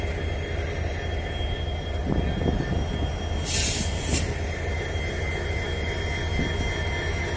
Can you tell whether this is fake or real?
real